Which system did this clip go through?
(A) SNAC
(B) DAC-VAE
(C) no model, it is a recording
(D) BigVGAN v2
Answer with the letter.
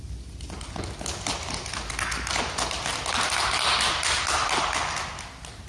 C